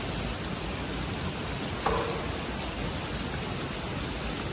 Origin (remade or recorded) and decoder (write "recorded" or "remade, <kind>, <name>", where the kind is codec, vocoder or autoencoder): recorded